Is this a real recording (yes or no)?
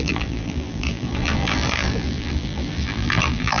no